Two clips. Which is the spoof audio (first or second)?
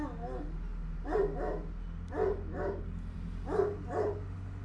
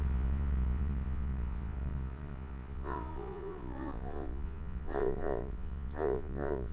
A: second